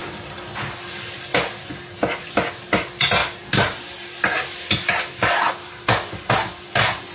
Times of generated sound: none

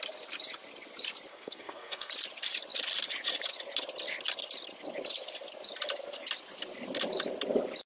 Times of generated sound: 1.3-2.1 (codec, SNAC)

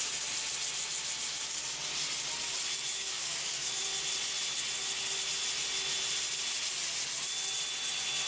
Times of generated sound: 2.9-3.7 (codec, DAC)

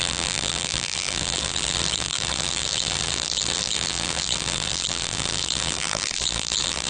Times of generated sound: 0.0-6.9 (vocoder, BigVGAN v2)

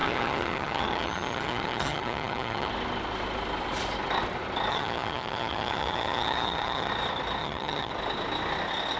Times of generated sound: 0.0-2.7 (vocoder, HiFi-GAN); 4.7-6.9; 7.4-7.9

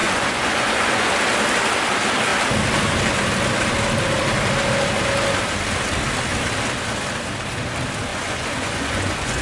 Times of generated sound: 0.0-1.1 (vocoder, Vocos); 8.1-9.4